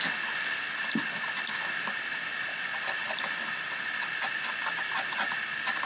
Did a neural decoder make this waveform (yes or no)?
no